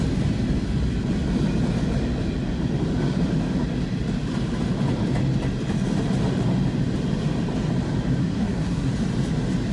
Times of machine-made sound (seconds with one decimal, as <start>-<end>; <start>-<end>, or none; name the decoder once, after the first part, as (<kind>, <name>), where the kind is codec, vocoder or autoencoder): 8.2-8.9 (codec, SNAC)